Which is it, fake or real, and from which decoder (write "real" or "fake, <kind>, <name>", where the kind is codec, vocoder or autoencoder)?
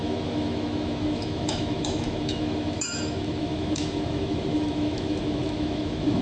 fake, autoencoder, DAC-VAE